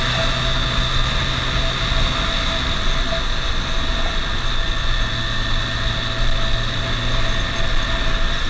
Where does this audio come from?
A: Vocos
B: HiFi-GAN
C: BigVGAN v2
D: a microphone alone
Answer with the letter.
D